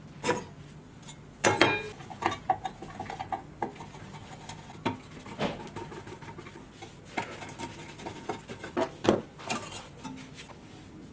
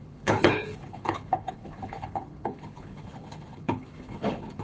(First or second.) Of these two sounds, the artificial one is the second